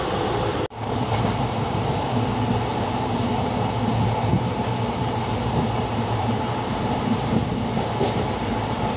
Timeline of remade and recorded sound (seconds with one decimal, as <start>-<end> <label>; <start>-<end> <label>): 0.0-2.7 recorded; 2.7-3.5 remade; 3.5-6.2 recorded; 6.2-7.5 remade; 7.5-9.0 recorded